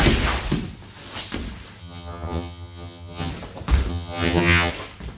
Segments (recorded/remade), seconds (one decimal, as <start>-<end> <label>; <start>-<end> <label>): 0.0-1.8 recorded; 1.8-3.3 remade; 3.3-3.9 recorded; 3.9-4.7 remade; 4.7-5.2 recorded